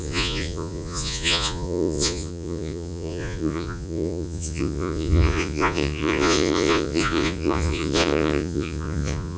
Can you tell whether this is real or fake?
fake